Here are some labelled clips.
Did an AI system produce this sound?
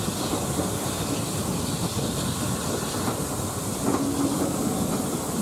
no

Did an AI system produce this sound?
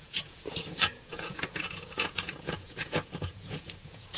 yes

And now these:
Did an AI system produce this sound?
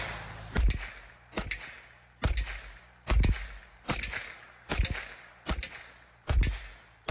no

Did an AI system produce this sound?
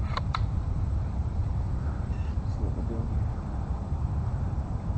yes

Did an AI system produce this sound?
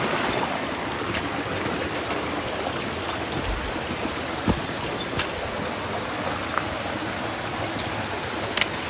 no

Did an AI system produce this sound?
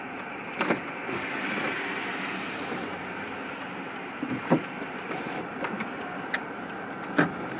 no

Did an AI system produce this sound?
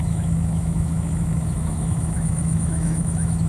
yes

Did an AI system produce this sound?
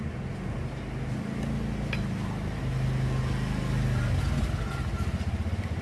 no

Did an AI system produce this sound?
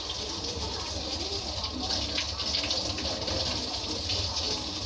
yes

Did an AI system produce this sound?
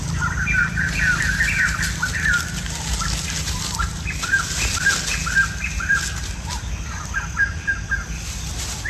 no